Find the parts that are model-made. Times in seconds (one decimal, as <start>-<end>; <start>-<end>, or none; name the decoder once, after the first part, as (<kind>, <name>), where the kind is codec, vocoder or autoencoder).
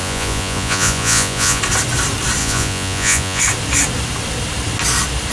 0.0-1.6 (vocoder, Vocos); 2.4-3.4